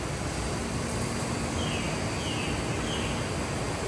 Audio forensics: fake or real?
real